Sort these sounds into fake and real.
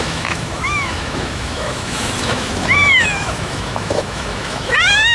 fake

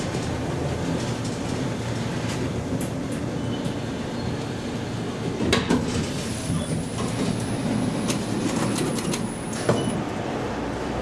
real